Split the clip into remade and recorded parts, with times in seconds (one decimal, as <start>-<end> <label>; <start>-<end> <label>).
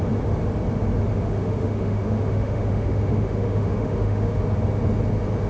0.0-1.1 recorded; 1.1-4.4 remade; 4.4-5.5 recorded